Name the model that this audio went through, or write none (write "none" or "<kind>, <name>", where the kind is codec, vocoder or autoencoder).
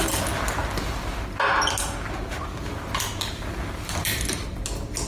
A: none